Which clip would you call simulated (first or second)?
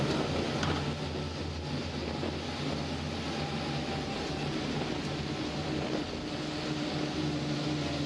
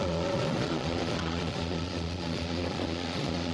second